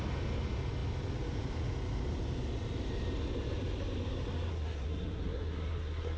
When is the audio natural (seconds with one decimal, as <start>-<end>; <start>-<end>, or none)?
0.0-4.5